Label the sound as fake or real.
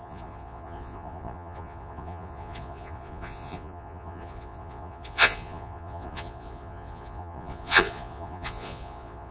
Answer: fake